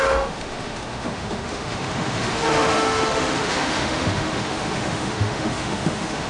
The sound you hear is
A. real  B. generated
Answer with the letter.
B